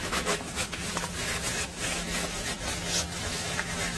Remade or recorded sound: remade